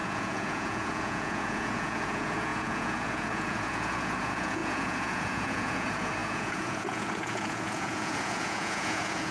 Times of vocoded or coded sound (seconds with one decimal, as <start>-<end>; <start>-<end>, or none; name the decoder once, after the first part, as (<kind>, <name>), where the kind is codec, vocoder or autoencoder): 0.0-9.3 (vocoder, Vocos)